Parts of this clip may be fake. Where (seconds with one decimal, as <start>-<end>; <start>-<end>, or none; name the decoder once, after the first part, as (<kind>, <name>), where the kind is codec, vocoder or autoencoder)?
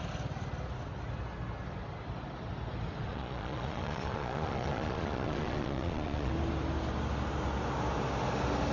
3.1-6.3 (vocoder, Vocos)